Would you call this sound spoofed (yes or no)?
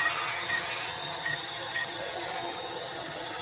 yes